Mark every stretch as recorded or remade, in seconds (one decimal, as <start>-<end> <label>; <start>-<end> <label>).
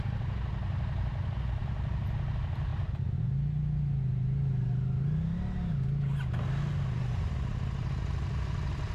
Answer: 0.0-8.9 recorded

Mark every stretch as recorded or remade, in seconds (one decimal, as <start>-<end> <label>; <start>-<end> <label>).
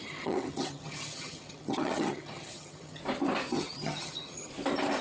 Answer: 0.0-3.0 remade; 3.0-3.5 recorded; 3.5-4.5 remade; 4.5-5.0 recorded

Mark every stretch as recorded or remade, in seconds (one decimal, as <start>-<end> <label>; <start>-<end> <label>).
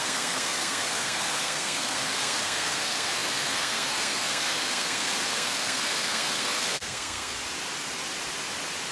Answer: 0.0-7.4 remade; 7.4-8.9 recorded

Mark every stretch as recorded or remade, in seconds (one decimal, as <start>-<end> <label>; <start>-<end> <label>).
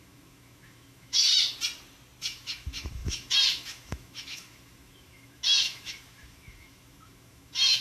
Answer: 0.0-1.3 remade; 1.3-2.2 recorded; 2.2-7.8 remade